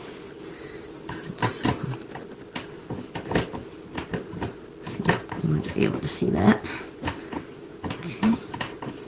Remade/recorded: recorded